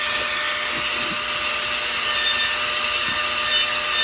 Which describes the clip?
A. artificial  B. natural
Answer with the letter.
B